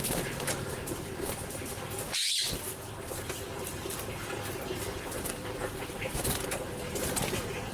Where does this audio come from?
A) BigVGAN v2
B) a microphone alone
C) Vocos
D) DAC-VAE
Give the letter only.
A